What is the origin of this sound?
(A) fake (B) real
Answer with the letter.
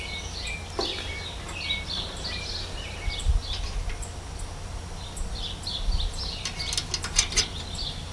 B